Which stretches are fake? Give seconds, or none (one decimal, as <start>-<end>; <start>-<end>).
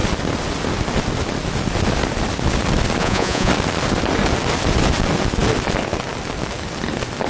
3.0-3.5